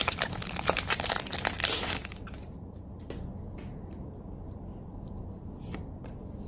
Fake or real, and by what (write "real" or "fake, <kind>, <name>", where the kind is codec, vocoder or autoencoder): real